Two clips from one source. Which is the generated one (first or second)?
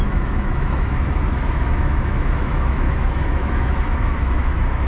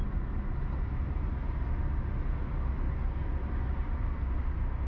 first